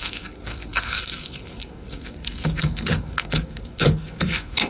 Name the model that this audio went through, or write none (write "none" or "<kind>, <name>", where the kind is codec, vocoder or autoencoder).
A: codec, SNAC